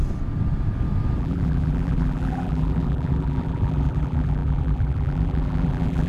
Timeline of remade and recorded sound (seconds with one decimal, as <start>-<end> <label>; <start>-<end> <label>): 0.0-1.2 recorded; 1.2-6.1 remade